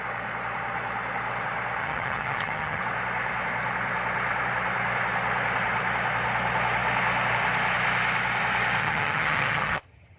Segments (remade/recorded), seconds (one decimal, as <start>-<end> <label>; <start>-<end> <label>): 0.0-1.8 recorded; 1.8-2.8 remade; 2.8-8.8 recorded; 8.8-10.2 remade